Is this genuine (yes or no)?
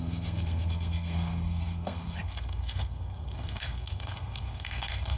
no